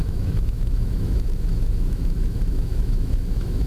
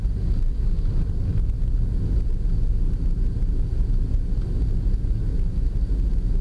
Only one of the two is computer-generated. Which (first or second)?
first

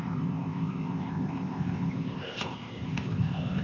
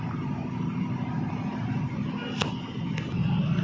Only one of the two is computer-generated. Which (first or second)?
first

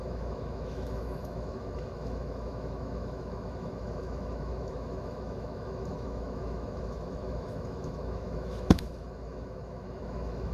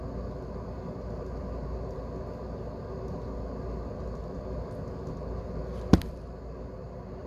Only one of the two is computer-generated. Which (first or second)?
first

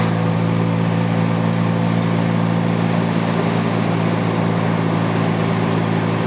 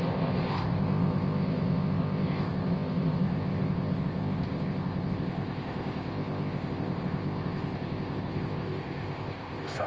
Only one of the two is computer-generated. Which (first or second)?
second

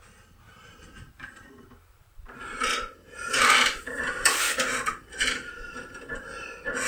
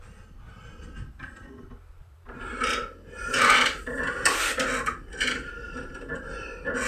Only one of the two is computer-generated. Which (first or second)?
first